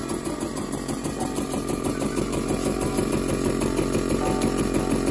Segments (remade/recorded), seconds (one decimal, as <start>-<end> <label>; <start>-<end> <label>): 0.0-3.1 remade; 3.1-5.1 recorded